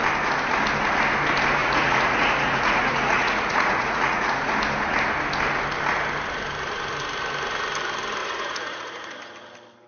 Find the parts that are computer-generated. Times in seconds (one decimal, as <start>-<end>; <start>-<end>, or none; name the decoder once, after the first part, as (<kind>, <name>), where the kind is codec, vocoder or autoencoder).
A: 1.6-4.5 (vocoder, Vocos); 8.2-9.1